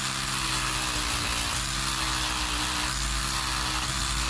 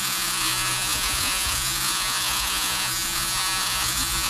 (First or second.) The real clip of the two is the first